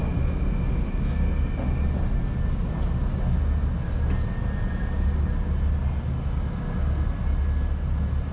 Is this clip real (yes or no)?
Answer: yes